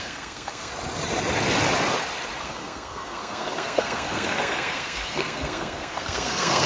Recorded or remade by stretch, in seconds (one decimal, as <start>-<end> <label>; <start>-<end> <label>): 0.0-0.7 remade; 0.7-2.4 recorded; 2.4-6.7 remade